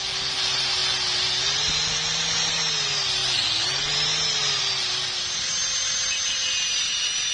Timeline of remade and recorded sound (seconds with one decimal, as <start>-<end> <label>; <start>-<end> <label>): 0.0-7.3 recorded